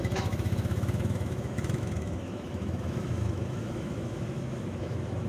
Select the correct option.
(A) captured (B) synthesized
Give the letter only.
B